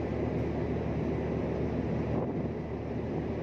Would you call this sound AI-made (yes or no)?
no